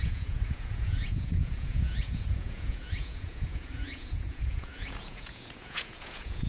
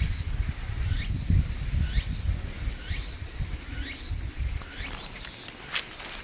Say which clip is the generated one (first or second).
first